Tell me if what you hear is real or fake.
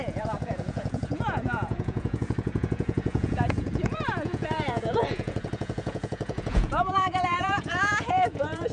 fake